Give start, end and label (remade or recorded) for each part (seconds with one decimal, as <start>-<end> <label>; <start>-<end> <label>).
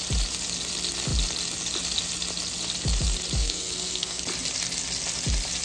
0.0-3.4 recorded; 3.4-4.2 remade; 4.2-5.6 recorded